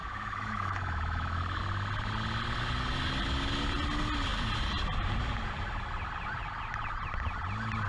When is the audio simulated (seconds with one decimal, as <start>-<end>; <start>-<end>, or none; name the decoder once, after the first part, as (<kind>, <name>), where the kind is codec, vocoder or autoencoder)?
0.0-1.6 (autoencoder, DAC-VAE)